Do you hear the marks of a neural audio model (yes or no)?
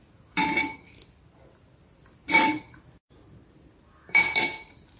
no